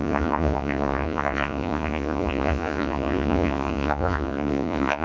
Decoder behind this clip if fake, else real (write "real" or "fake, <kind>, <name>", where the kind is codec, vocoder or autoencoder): fake, vocoder, Vocos